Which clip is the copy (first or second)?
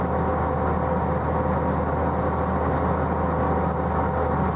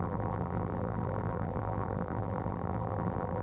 second